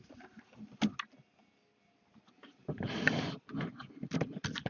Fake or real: real